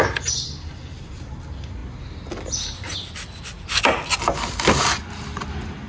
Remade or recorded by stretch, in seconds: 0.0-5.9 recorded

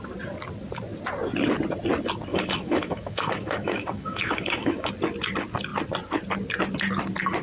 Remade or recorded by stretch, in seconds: 0.0-2.3 recorded; 2.3-4.9 remade; 4.9-7.4 recorded

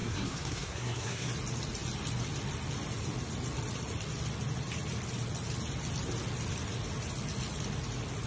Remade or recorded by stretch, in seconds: 0.0-1.3 remade; 1.3-8.3 recorded

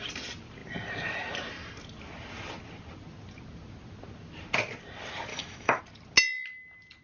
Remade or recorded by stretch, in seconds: 0.0-5.3 recorded; 5.3-5.8 remade; 5.8-7.0 recorded

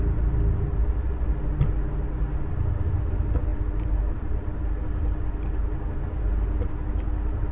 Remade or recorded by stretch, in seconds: 0.0-7.5 recorded

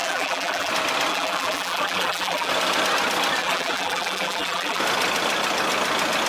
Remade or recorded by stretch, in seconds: 0.0-0.7 remade; 0.7-1.1 recorded; 1.1-2.5 remade; 2.5-3.4 recorded; 3.4-4.8 remade; 4.8-6.3 recorded